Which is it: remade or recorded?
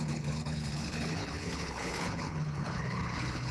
remade